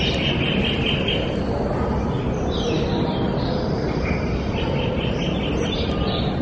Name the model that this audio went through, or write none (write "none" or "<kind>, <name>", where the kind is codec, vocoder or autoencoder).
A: none